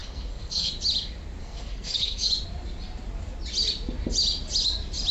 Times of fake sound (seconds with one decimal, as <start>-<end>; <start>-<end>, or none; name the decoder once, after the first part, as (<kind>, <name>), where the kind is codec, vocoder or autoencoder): 0.0-0.7 (codec, SNAC); 1.4-2.3